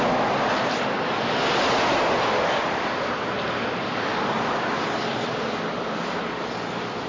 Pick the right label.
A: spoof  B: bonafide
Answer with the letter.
B